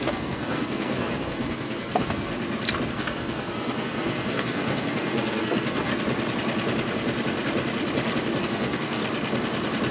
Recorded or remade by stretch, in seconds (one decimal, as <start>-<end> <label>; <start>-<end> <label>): 0.0-2.3 remade; 2.3-2.9 recorded; 2.9-5.9 remade; 5.9-8.4 recorded; 8.4-9.0 remade; 9.0-9.9 recorded